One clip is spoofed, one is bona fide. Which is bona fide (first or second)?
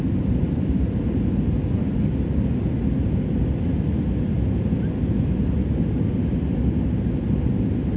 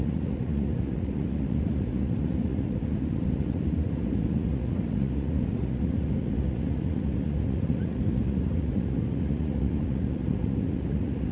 first